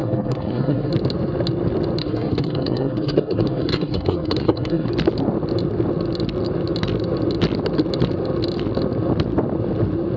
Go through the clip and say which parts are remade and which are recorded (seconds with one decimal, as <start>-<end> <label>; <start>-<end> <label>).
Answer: 0.0-0.9 remade; 0.9-2.0 recorded; 2.0-4.9 remade; 4.9-10.2 recorded